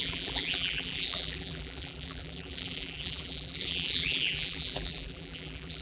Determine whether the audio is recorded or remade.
remade